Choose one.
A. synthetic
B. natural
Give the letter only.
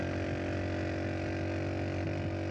B